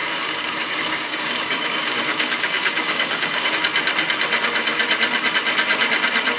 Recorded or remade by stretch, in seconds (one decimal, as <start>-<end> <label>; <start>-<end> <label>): 0.0-3.5 remade; 3.5-6.4 recorded